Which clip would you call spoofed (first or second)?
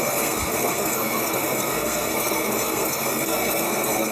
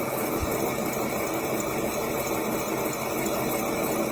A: first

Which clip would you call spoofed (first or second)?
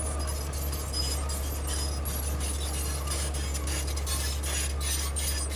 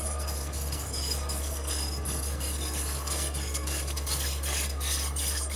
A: second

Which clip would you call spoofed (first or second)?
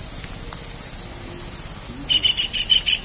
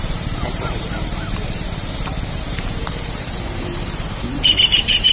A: second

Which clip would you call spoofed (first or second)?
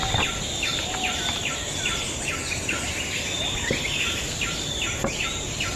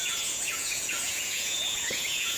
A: second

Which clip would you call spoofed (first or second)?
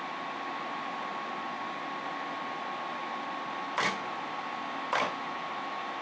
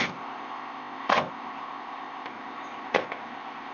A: second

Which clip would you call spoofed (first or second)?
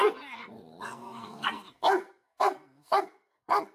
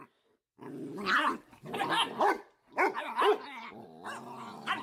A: first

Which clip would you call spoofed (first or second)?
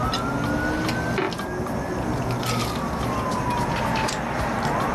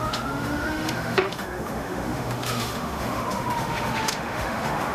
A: second